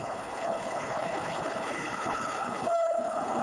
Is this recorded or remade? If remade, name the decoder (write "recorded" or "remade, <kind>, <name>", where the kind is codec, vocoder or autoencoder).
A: remade, codec, HILCodec